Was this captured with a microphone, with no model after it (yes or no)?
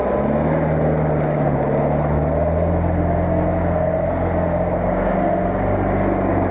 yes